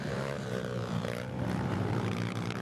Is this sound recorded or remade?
remade